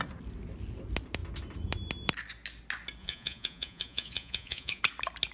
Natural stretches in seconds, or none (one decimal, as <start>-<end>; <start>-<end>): 0.0-3.0; 4.8-5.3